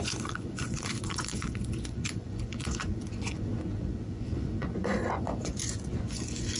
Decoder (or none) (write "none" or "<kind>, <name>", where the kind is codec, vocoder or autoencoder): vocoder, Vocos